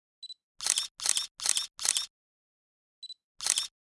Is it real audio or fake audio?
real